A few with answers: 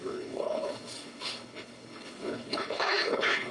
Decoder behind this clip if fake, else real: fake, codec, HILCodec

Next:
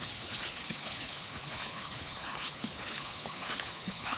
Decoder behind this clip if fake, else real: fake, codec, HILCodec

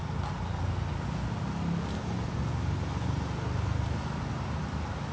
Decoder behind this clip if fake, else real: real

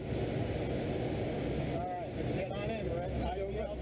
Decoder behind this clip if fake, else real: real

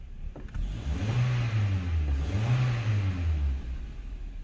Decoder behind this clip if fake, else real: real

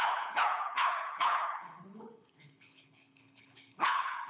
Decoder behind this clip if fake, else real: fake, codec, HILCodec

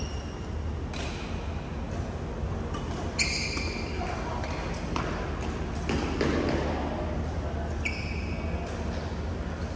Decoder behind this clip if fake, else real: real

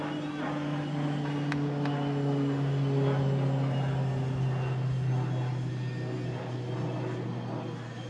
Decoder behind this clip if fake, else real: real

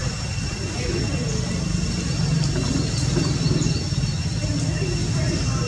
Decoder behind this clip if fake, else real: real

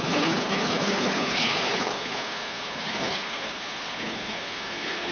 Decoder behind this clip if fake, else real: fake, codec, HILCodec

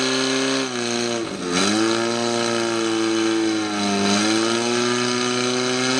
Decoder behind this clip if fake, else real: real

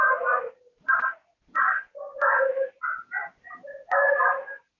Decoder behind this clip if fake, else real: real